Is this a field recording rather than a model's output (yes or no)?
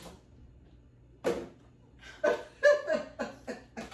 yes